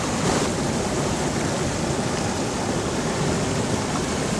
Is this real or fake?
real